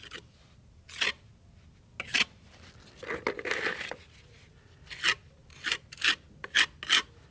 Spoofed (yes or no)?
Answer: no